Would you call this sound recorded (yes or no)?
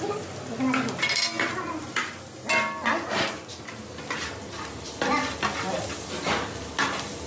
yes